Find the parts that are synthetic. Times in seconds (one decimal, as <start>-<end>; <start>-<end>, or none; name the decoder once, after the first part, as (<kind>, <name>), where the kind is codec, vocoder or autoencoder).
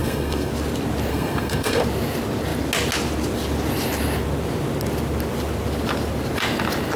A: 0.0-0.5 (codec, SNAC); 1.1-1.8